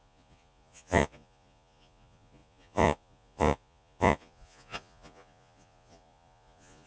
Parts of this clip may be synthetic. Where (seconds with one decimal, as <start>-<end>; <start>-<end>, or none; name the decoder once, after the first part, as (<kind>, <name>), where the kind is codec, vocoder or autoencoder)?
0.0-6.9 (vocoder, Vocos)